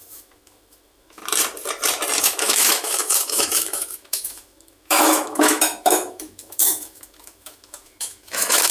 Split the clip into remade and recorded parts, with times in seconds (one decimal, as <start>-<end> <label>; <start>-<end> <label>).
0.0-1.2 remade; 1.2-2.2 recorded; 2.2-8.7 remade

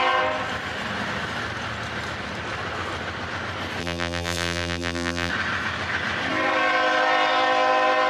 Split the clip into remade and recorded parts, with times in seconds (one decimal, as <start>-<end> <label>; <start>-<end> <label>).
0.0-3.8 recorded; 3.8-5.3 remade; 5.3-8.1 recorded

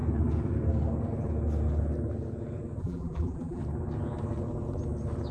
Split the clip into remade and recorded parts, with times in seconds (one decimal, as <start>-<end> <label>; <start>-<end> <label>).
0.0-2.8 recorded; 2.8-3.6 remade; 3.6-5.3 recorded

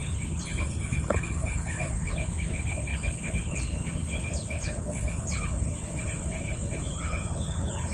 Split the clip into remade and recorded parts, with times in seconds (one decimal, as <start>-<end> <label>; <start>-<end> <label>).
0.0-7.9 remade

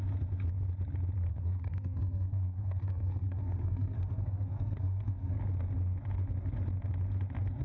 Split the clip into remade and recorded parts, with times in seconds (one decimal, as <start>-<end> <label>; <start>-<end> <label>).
0.0-1.3 recorded; 1.3-5.4 remade; 5.4-7.6 recorded

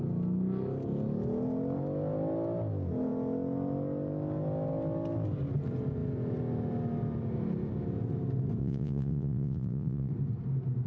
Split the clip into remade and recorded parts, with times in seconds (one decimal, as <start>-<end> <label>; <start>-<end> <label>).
0.0-8.6 recorded; 8.6-10.1 remade; 10.1-10.9 recorded